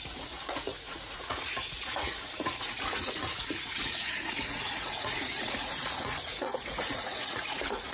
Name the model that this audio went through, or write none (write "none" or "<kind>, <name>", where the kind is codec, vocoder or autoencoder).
vocoder, Vocos